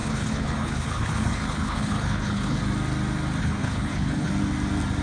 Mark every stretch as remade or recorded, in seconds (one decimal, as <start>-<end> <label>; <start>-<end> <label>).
0.0-2.6 remade; 2.6-3.4 recorded; 3.4-4.3 remade; 4.3-5.0 recorded